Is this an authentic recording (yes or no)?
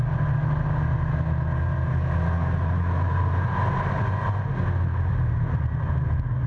yes